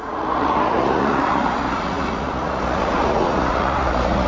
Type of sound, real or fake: fake